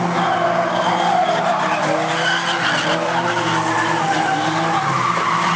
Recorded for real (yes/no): yes